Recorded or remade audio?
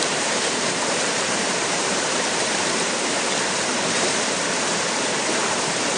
remade